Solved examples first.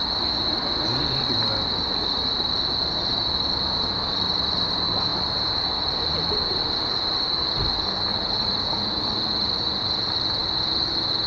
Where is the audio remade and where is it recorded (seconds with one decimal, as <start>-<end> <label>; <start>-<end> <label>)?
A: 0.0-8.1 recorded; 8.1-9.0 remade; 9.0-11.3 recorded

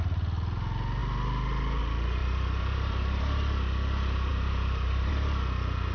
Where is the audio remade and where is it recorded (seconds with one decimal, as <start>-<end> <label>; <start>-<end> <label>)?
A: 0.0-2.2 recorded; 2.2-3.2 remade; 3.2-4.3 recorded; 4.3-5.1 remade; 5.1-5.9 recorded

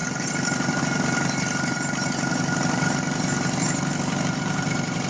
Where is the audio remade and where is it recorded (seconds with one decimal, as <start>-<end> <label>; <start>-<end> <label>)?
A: 0.0-5.1 remade

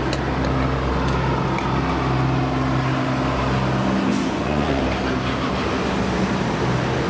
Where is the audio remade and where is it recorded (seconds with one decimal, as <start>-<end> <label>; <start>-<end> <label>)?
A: 0.0-4.1 recorded; 4.1-4.8 remade; 4.8-7.1 recorded

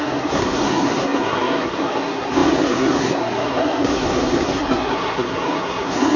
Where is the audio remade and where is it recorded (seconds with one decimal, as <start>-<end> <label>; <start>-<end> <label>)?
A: 0.0-6.2 remade

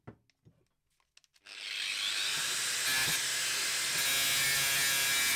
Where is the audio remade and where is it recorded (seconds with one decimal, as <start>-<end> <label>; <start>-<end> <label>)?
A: 0.0-5.4 recorded